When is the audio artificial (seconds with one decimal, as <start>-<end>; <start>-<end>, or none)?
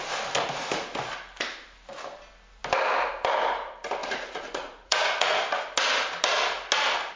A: 4.0-5.4